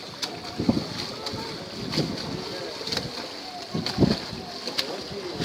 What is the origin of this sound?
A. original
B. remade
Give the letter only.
A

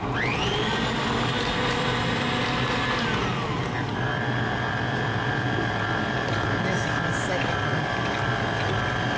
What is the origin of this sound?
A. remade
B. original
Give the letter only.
B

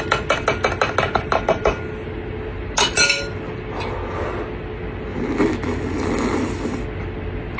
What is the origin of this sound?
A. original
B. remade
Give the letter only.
A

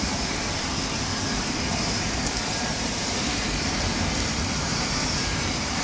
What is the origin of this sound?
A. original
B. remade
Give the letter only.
B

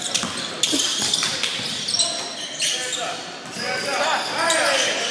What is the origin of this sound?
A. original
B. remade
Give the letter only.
A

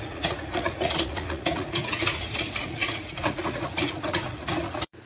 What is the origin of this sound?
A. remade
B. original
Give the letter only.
A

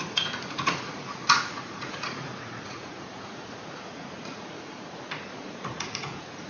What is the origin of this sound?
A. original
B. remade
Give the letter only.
B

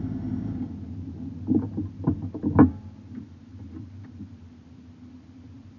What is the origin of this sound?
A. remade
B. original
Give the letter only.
B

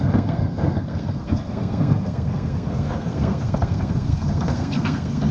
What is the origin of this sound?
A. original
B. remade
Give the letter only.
B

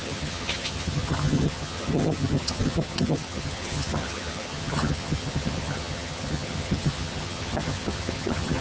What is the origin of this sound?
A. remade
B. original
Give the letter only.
A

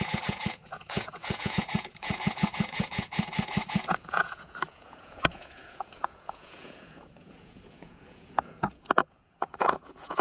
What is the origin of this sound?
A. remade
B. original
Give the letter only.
A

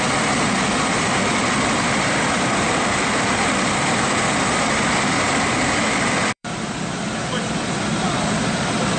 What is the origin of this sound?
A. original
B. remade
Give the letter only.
B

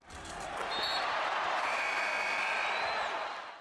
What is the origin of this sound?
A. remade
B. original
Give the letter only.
B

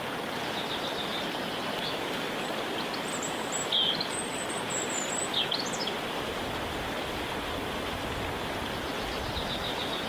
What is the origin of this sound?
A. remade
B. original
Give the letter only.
B